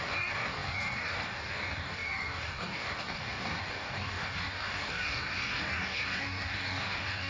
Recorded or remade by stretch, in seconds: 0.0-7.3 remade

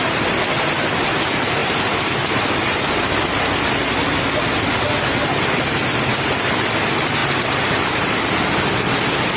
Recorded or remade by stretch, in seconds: 0.0-1.6 recorded; 1.6-3.1 remade; 3.1-6.1 recorded; 6.1-6.7 remade; 6.7-7.2 recorded; 7.2-8.2 remade; 8.2-9.4 recorded

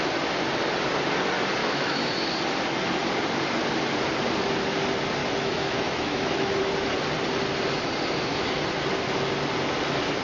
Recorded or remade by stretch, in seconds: 0.0-1.6 recorded; 1.6-2.3 remade; 2.3-5.2 recorded; 5.2-6.6 remade; 6.6-10.2 recorded

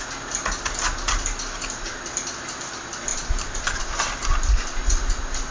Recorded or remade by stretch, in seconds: 0.0-3.1 recorded; 3.1-3.8 remade; 3.8-5.5 recorded

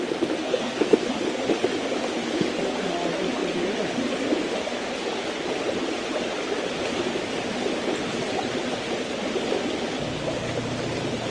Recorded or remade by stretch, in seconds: 0.0-0.4 recorded; 0.4-1.1 remade; 1.1-11.3 recorded